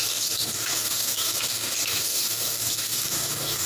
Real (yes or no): no